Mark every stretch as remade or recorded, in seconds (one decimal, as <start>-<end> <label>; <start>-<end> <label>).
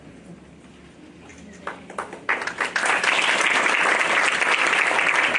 0.0-5.4 recorded